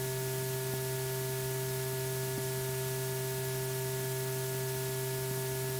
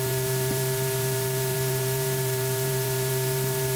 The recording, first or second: first